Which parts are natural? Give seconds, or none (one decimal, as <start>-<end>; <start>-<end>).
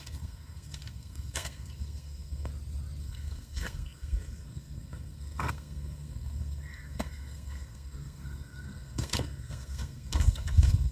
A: 2.5-3.0